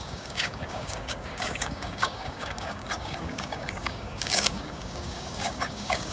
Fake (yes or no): yes